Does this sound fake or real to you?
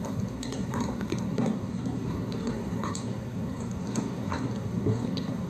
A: fake